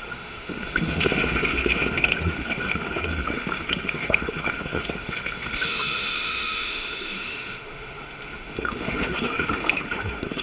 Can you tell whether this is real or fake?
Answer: fake